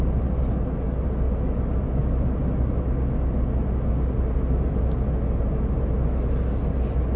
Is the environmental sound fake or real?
real